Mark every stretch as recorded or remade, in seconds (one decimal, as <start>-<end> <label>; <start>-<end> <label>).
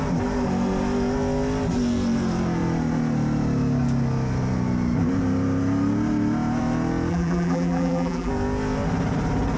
0.0-7.1 recorded; 7.1-8.3 remade; 8.3-9.6 recorded